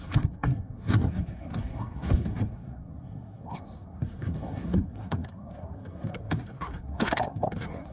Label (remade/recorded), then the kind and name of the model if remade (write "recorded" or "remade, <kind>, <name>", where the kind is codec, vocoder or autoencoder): remade, codec, SNAC